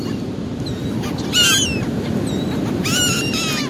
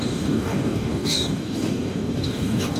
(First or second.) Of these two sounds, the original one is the first